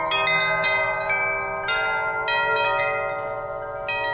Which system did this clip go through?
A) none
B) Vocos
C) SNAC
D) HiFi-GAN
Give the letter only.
A